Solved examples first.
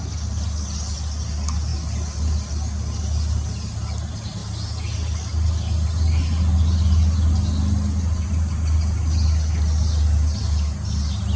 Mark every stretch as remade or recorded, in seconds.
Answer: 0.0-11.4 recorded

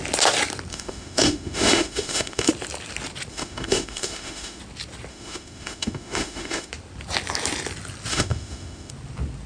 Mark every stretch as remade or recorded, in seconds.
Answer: 0.0-0.7 recorded; 0.7-2.5 remade; 2.5-3.3 recorded; 3.3-4.6 remade; 4.6-5.1 recorded; 5.1-6.7 remade; 6.7-8.1 recorded; 8.1-8.9 remade; 8.9-9.5 recorded

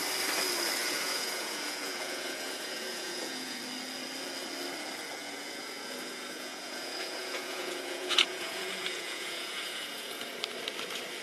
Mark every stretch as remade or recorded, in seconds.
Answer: 0.0-0.8 recorded; 0.8-3.6 remade; 3.6-5.2 recorded; 5.2-10.3 remade; 10.3-11.2 recorded

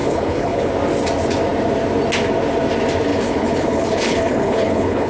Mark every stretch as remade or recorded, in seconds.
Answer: 0.0-0.7 remade; 0.7-3.1 recorded; 3.1-5.1 remade